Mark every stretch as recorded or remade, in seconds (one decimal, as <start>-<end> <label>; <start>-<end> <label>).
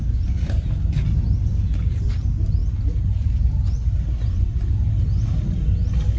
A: 0.0-6.2 recorded